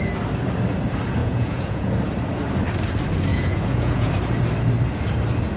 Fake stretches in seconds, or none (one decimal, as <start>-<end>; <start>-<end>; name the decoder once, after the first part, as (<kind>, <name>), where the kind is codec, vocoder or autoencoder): 1.2-1.9 (vocoder, Vocos); 3.3-4.1